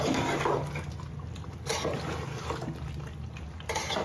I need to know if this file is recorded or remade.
recorded